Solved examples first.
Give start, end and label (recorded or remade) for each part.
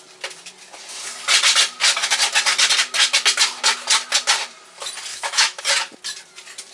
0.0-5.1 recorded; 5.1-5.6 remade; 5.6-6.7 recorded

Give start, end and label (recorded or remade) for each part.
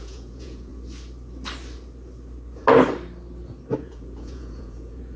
0.0-0.7 remade; 0.7-3.8 recorded; 3.8-5.2 remade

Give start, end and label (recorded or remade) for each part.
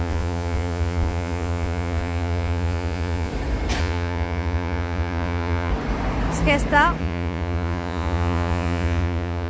0.0-3.3 remade; 3.3-3.8 recorded; 3.8-5.7 remade; 5.7-7.0 recorded; 7.0-9.5 remade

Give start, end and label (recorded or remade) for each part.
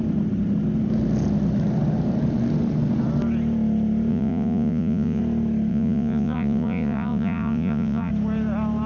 0.0-4.1 recorded; 4.1-5.2 remade; 5.2-5.7 recorded; 5.7-8.1 remade; 8.1-8.9 recorded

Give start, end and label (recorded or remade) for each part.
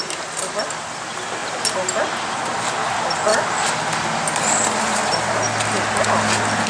0.0-6.7 recorded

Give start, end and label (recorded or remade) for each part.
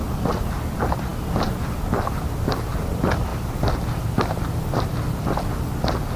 0.0-6.2 recorded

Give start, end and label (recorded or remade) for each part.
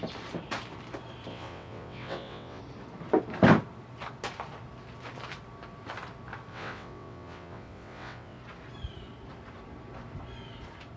0.0-1.3 recorded; 1.3-2.6 remade; 2.6-6.5 recorded; 6.5-8.4 remade; 8.4-11.0 recorded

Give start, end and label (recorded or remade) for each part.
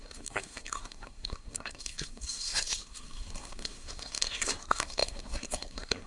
0.0-6.1 remade